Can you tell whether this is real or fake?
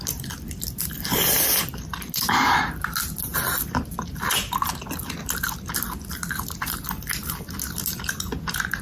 real